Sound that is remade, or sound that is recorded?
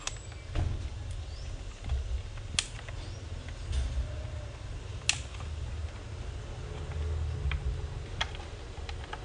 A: recorded